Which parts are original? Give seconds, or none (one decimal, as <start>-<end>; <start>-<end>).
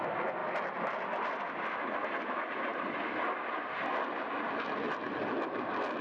0.0-6.0